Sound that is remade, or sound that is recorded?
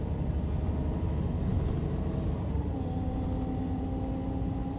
recorded